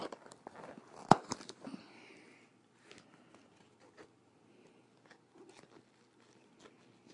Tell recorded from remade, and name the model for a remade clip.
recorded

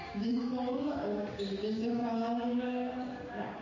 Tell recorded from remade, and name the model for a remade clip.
remade, codec, DAC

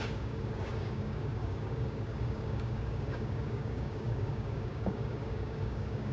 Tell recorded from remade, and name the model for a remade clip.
remade, codec, DAC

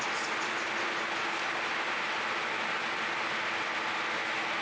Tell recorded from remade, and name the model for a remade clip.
recorded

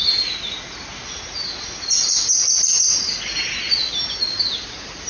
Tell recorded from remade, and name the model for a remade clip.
recorded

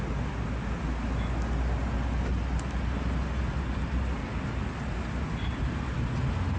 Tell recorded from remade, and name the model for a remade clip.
recorded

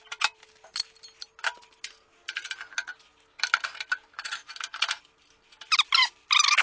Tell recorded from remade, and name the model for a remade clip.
recorded